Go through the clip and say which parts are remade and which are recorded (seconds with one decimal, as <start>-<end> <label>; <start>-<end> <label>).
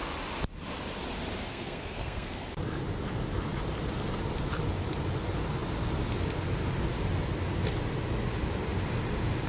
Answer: 0.0-1.5 recorded; 1.5-2.4 remade; 2.4-9.5 recorded